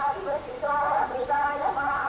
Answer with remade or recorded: recorded